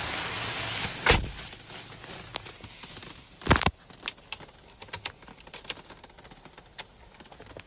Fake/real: real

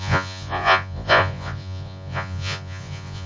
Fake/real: fake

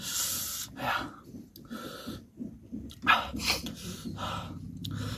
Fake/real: real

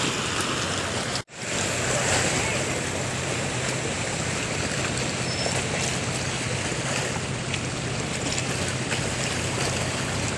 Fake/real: real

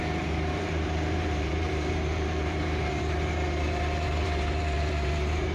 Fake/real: fake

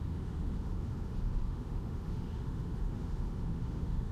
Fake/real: fake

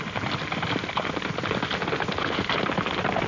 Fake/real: real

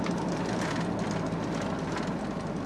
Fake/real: real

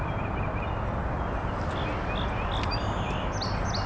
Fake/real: real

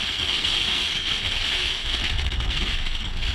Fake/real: fake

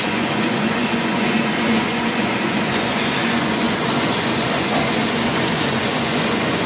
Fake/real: fake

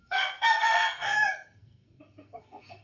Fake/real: fake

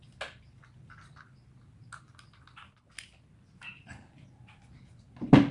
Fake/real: real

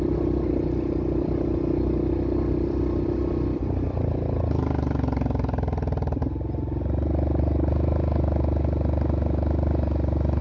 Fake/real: real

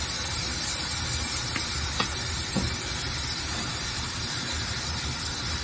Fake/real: real